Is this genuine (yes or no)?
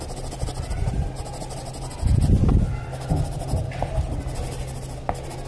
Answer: yes